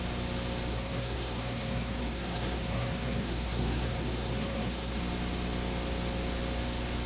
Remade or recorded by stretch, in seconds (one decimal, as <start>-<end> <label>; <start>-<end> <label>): 0.0-0.7 recorded; 0.7-5.0 remade; 5.0-7.1 recorded